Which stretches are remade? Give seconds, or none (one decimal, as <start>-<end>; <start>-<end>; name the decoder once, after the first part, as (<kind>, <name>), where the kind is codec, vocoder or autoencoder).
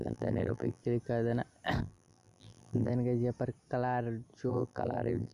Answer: 0.0-0.8 (vocoder, BigVGAN v2); 1.8-2.9; 4.5-5.3